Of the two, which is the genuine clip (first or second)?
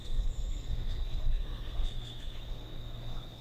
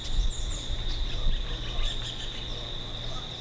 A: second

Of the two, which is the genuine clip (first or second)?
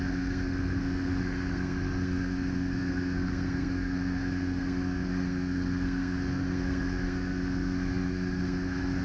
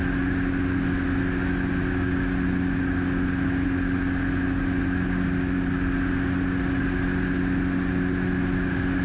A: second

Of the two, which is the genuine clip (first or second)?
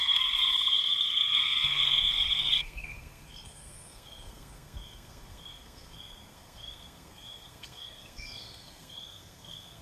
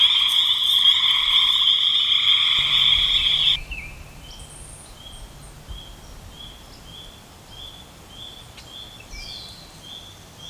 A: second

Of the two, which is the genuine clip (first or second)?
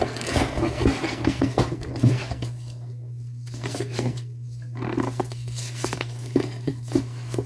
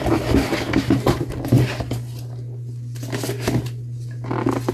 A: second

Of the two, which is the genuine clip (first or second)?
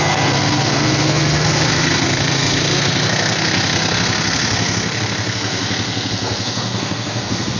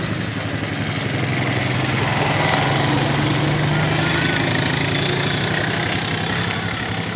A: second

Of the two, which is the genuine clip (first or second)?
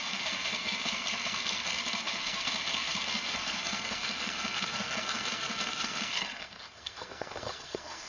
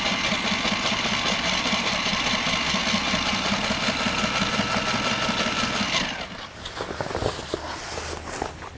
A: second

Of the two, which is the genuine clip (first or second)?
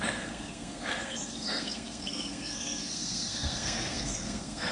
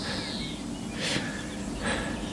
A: second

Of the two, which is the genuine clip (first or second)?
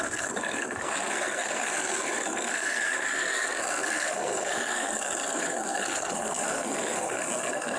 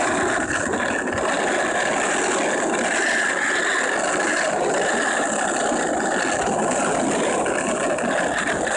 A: second